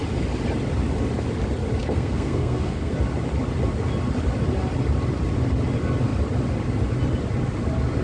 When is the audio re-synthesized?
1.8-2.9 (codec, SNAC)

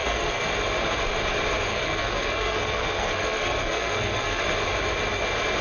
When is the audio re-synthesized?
0.0-0.5 (codec, SNAC); 1.7-4.4

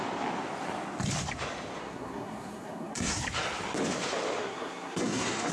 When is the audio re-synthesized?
1.8-3.2 (codec, SNAC); 4.4-5.5

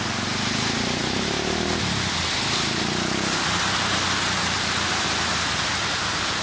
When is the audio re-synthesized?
none